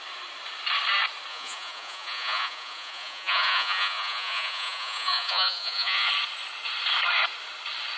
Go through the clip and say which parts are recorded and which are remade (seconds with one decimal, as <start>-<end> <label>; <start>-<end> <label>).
0.0-1.3 recorded; 1.3-6.1 remade; 6.1-8.0 recorded